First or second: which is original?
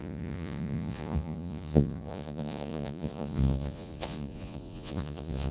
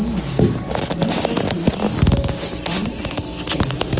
second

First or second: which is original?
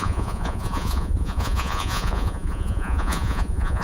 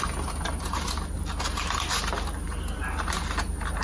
second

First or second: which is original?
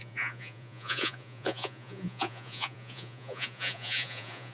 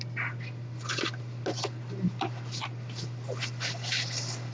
second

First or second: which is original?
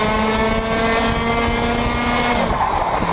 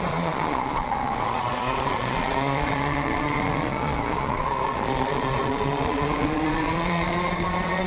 first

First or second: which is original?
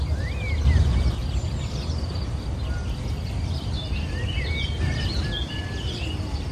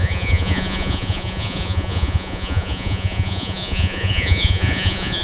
first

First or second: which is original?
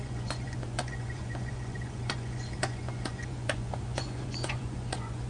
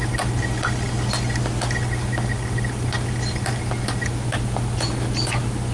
second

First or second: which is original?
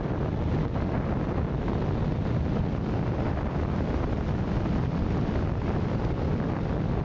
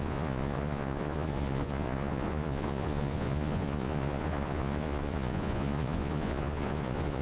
first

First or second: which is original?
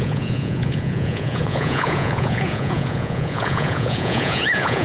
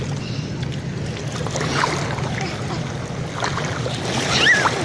second